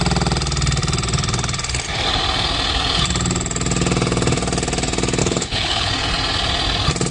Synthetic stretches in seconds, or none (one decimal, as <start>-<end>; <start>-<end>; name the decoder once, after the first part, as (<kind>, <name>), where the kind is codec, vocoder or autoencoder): 5.2-5.9 (codec, HILCodec)